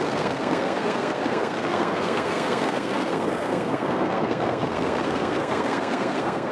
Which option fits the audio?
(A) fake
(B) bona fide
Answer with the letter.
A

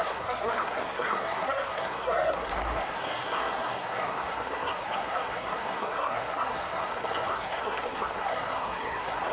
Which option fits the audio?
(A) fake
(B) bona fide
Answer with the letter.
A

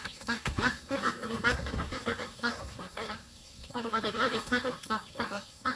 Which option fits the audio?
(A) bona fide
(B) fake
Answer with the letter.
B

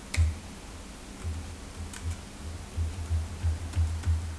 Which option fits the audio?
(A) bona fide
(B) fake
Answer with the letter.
A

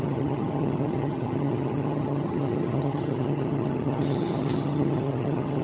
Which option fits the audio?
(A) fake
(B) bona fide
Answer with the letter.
A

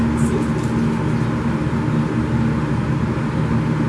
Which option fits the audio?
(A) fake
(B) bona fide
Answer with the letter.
B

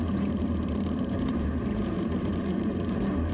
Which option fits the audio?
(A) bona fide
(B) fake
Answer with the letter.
B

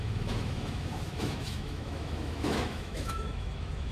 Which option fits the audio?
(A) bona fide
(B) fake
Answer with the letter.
B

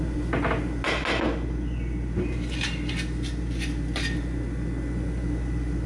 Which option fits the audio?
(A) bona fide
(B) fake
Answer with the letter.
A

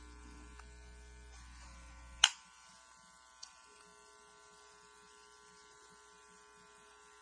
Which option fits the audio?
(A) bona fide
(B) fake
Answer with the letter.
A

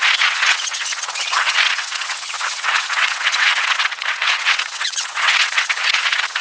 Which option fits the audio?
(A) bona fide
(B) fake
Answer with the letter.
B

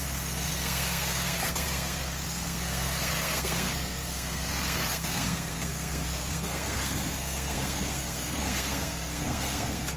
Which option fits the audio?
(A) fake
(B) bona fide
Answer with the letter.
A